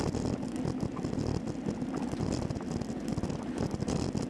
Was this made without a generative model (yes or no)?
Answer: yes